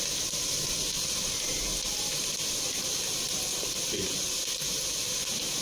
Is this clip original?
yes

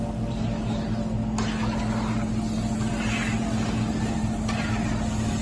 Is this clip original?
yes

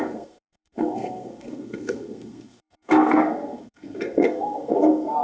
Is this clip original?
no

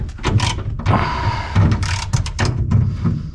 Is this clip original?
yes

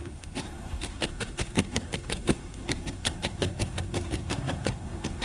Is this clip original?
no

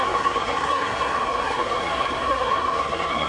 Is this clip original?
no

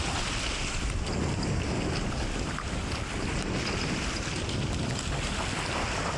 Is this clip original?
yes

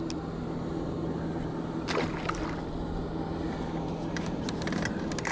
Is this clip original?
yes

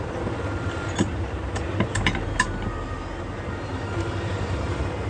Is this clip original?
yes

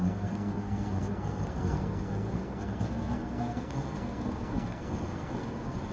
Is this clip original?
no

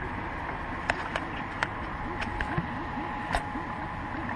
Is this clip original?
yes